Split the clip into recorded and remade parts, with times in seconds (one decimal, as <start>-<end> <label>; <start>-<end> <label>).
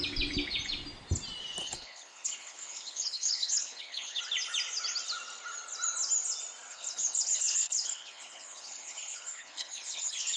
0.0-1.6 recorded; 1.6-4.2 remade; 4.2-6.7 recorded; 6.7-10.4 remade